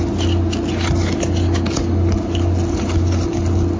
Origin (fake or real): real